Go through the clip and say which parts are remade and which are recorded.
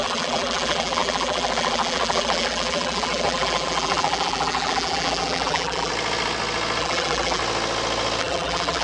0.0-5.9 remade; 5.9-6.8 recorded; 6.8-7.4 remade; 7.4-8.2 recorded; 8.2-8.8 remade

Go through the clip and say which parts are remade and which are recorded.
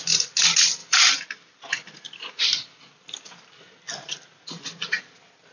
0.0-0.8 recorded; 0.8-3.8 remade; 3.8-5.5 recorded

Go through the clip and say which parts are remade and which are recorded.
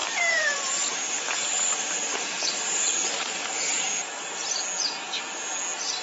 0.0-3.6 remade; 3.6-6.0 recorded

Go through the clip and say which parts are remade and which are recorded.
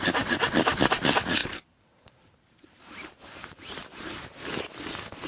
0.0-1.4 recorded; 1.4-4.6 remade; 4.6-5.3 recorded